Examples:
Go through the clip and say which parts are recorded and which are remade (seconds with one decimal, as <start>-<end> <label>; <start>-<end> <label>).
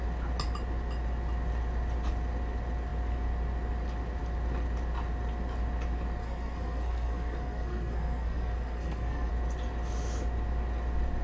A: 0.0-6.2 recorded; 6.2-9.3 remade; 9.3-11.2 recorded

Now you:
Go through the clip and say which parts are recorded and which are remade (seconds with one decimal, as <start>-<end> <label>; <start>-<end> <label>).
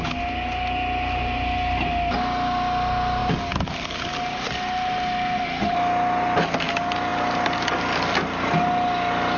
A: 0.0-9.4 recorded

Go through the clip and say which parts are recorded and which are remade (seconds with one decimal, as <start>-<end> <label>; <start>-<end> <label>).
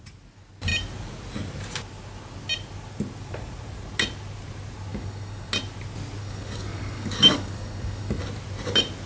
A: 0.0-4.9 recorded; 4.9-5.5 remade; 5.5-6.2 recorded; 6.2-8.2 remade; 8.2-9.1 recorded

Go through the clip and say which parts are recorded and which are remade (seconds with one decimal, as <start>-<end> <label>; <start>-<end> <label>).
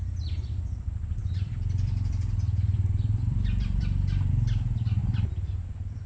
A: 0.0-1.2 recorded; 1.2-4.3 remade; 4.3-5.0 recorded; 5.0-6.1 remade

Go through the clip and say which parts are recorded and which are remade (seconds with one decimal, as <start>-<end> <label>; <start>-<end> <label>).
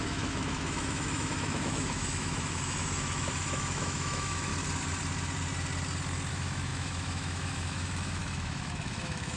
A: 0.0-4.5 remade; 4.5-6.3 recorded; 6.3-9.4 remade